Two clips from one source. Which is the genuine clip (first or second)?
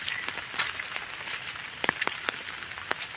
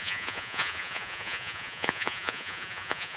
first